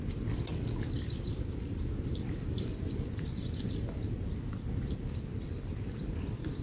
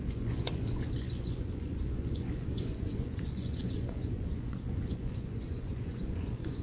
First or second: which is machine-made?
second